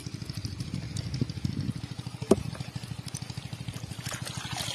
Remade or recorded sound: recorded